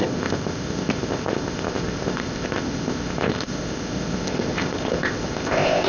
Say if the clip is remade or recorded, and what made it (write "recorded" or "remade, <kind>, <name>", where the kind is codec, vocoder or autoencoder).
remade, codec, ZipCodec